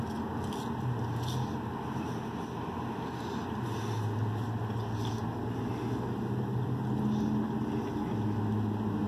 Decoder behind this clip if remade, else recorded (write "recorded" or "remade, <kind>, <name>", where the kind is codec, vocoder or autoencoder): recorded